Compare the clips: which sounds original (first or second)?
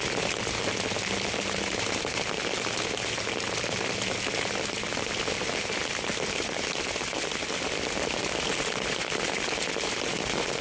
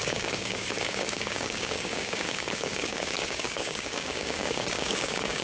first